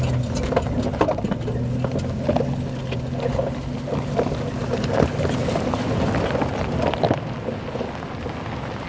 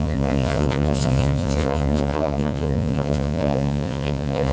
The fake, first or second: second